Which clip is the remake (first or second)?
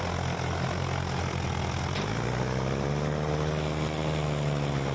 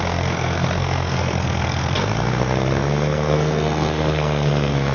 second